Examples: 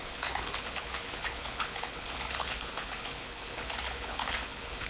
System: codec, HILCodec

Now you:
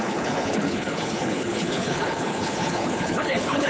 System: codec, HILCodec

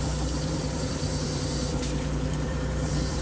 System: vocoder, BigVGAN v2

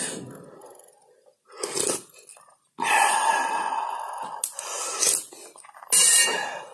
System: none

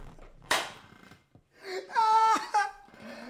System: vocoder, BigVGAN v2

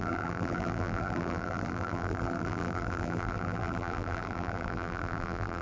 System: vocoder, BigVGAN v2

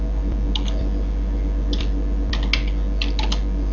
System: none